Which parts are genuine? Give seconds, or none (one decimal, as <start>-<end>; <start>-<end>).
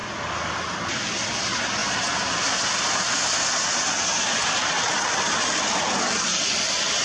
0.0-7.0